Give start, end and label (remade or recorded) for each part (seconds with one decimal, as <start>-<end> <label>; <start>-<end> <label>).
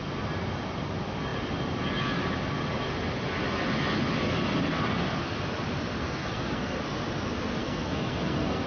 0.0-6.0 recorded; 6.0-6.8 remade; 6.8-7.6 recorded; 7.6-8.7 remade